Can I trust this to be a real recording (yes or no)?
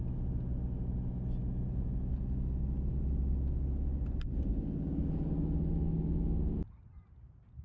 yes